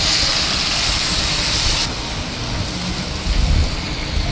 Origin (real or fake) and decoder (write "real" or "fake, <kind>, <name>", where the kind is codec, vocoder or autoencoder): real